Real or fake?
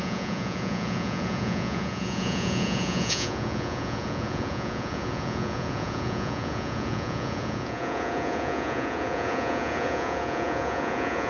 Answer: fake